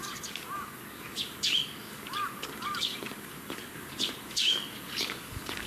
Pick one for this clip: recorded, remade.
remade